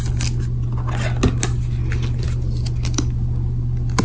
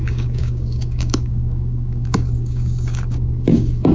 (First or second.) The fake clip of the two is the second